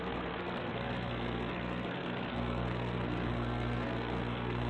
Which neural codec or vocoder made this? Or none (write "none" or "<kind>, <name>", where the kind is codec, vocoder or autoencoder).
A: codec, SNAC